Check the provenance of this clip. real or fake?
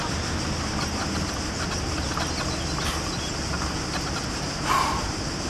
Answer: real